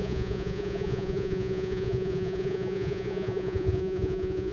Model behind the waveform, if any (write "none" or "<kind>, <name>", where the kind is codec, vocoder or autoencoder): vocoder, Vocos